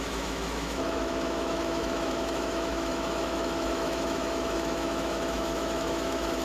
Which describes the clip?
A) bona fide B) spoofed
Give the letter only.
B